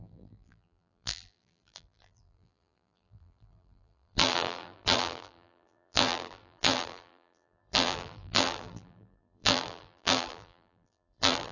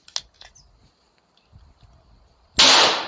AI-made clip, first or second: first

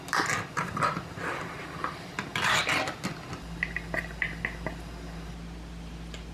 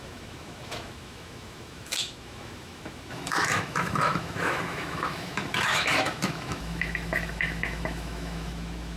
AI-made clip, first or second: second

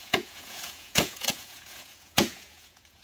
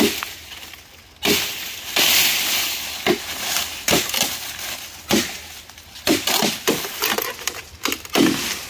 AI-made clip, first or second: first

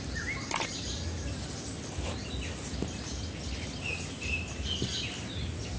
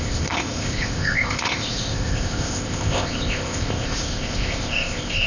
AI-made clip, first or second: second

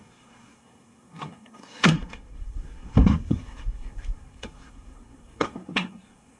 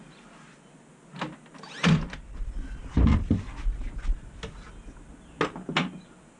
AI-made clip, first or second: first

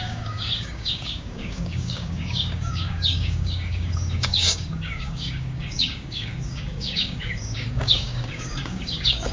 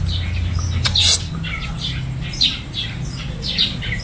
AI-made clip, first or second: first